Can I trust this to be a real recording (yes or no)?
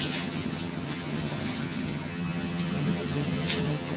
no